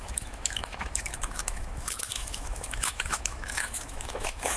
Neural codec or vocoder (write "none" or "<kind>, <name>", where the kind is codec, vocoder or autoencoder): autoencoder, DAC-VAE